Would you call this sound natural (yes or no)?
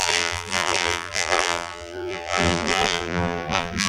no